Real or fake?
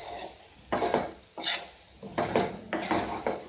real